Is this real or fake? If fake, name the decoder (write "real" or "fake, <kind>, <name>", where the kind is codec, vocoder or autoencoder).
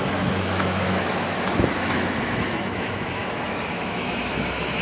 fake, autoencoder, DAC-VAE